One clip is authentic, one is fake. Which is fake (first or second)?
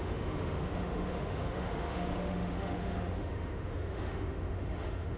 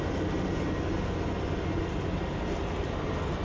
first